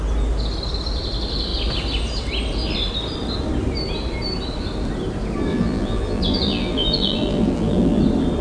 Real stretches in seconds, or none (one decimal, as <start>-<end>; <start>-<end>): 0.0-5.5; 8.0-8.4